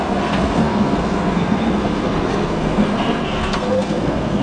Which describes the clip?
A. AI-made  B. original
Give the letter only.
A